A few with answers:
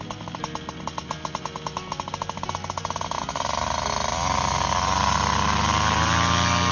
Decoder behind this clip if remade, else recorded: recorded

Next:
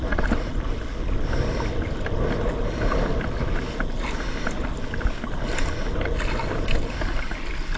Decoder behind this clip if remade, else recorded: recorded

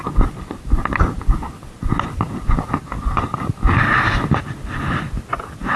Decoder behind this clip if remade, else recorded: recorded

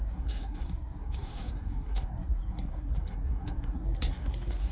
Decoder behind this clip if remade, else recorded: remade, codec, SNAC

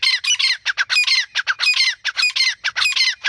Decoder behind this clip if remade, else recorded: recorded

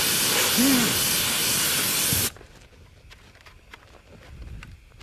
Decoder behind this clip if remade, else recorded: recorded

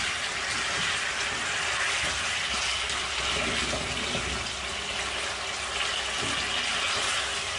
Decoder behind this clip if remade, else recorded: recorded